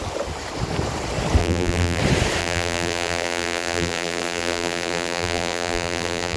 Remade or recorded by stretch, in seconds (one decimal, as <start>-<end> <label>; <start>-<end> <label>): 0.0-1.4 recorded; 1.4-2.0 remade; 2.0-2.4 recorded; 2.4-6.4 remade